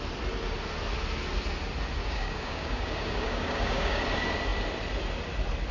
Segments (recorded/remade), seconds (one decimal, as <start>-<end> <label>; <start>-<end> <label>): 0.0-2.0 recorded; 2.0-4.0 remade; 4.0-5.7 recorded